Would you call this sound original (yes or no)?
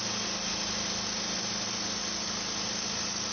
yes